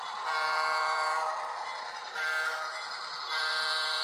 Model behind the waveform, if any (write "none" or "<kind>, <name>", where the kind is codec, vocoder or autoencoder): vocoder, BigVGAN v2